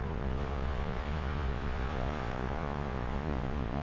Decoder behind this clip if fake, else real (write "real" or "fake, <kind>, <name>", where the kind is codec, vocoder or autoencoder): fake, vocoder, Vocos